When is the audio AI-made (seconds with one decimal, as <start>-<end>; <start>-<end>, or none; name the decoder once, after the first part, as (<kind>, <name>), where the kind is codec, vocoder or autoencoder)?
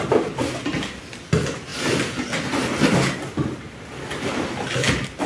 none